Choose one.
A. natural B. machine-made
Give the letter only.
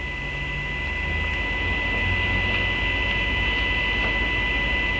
A